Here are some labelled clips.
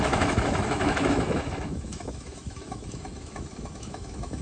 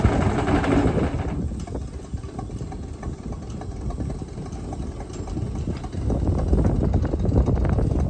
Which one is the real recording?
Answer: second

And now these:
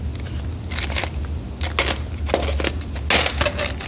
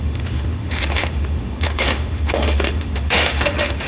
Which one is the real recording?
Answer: first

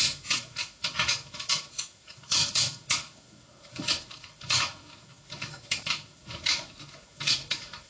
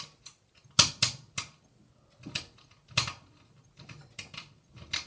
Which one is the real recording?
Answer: second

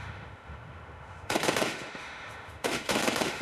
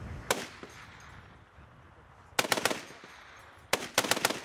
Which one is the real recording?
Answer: second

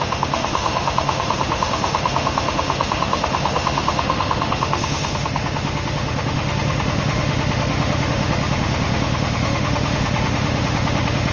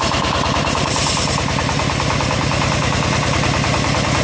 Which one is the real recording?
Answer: second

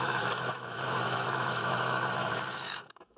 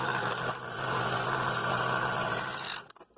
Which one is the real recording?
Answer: second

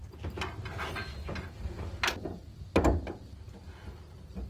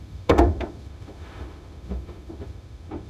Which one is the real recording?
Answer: first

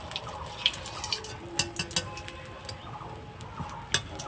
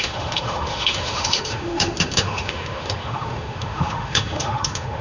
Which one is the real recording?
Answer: first